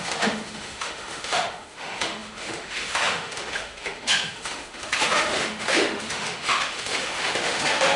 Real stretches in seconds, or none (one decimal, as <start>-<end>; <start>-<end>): none